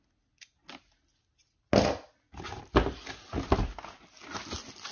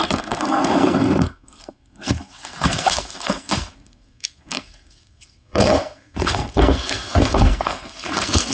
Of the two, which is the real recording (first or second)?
first